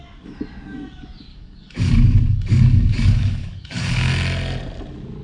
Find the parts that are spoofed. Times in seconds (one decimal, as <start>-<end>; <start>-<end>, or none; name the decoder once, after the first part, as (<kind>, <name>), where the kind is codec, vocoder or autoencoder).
1.3-4.1 (codec, DAC)

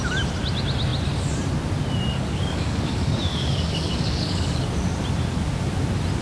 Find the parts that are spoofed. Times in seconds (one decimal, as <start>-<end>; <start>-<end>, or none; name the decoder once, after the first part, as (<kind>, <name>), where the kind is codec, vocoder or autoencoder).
2.1-4.6 (codec, DAC)

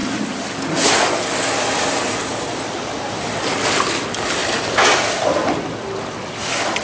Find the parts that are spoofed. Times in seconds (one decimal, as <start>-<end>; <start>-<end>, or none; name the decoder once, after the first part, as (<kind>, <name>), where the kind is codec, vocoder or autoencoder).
none

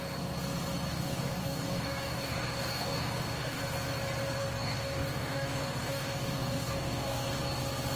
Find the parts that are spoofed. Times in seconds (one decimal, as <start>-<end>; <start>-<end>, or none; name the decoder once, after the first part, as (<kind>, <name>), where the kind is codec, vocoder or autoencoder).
0.9-3.6 (codec, DAC); 4.4-7.4

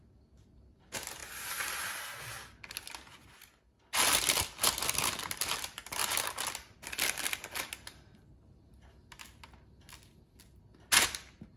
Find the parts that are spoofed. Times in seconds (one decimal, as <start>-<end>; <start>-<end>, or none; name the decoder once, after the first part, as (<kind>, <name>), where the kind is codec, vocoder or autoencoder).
none

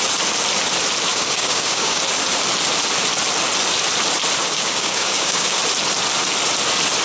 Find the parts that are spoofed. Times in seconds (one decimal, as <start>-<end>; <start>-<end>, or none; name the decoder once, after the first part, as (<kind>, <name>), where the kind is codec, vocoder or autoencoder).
1.1-2.0 (codec, DAC); 4.4-5.6

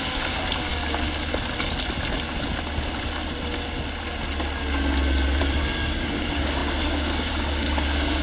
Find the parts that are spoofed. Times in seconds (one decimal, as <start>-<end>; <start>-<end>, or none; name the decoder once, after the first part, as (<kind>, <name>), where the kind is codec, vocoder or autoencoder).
0.0-0.7 (codec, DAC); 5.4-8.2